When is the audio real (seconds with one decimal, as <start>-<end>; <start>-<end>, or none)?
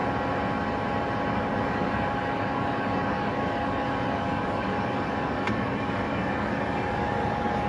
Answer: 0.0-1.3